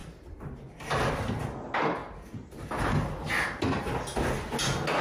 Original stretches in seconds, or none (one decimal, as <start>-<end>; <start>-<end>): 1.1-5.0